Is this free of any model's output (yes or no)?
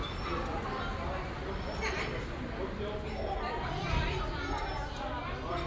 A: yes